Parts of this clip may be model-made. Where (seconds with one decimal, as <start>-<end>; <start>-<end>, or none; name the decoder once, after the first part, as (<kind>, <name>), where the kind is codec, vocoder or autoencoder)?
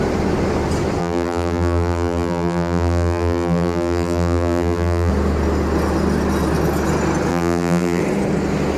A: 1.0-5.1 (vocoder, BigVGAN v2); 7.3-8.0